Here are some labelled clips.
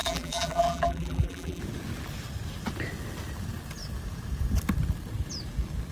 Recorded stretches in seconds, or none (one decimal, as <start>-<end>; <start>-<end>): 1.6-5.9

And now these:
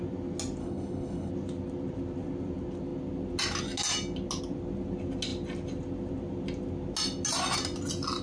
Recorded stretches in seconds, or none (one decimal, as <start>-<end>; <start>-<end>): 0.0-0.6; 1.3-8.2

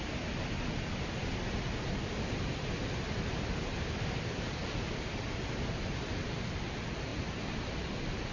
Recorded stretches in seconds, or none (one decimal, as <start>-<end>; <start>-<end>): 0.0-8.3

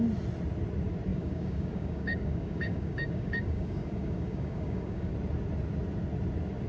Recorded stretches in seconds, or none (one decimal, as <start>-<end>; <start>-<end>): 0.0-1.1; 5.1-6.7

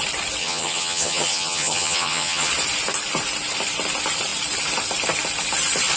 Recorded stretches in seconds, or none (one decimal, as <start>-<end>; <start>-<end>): 0.0-0.4; 2.5-6.0